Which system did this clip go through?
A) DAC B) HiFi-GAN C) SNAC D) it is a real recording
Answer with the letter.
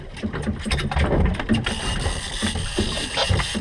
D